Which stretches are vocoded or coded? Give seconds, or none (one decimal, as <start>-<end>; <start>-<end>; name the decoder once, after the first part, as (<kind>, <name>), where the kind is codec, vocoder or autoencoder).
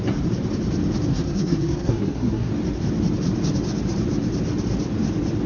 1.1-2.5 (codec, SNAC)